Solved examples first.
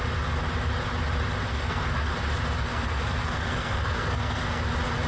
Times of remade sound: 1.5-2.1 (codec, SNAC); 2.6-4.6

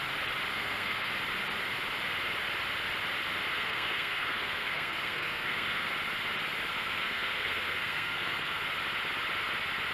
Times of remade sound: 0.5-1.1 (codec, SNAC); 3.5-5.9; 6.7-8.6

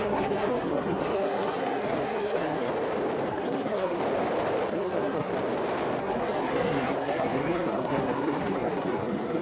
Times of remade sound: 0.0-2.7 (codec, SNAC); 3.3-4.0; 4.7-5.3; 6.0-9.4

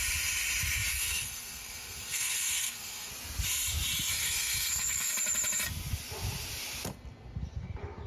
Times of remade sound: 0.9-3.1 (codec, SNAC); 4.2-5.1

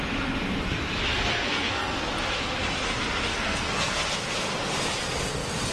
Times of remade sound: 1.1-2.1 (codec, SNAC); 3.3-4.0